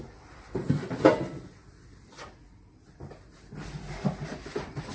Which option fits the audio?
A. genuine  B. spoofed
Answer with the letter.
A